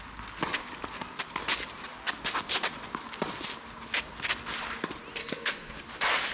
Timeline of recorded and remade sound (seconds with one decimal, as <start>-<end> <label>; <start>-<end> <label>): 0.0-5.2 recorded; 5.2-5.8 remade; 5.8-6.3 recorded